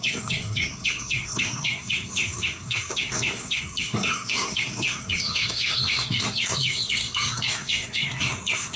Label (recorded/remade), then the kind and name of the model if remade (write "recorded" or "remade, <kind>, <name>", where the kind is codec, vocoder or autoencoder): remade, codec, SNAC